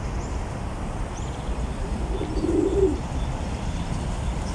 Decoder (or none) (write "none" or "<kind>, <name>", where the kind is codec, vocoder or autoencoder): vocoder, BigVGAN v2